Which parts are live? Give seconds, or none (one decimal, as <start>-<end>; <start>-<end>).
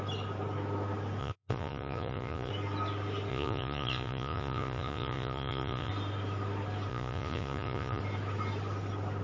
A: 0.0-1.2; 2.5-3.3; 5.9-6.9; 8.0-9.2